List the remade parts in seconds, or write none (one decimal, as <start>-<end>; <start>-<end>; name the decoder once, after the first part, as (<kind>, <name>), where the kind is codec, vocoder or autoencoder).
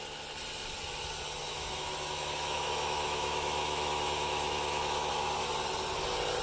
1.5-5.1 (autoencoder, DAC-VAE)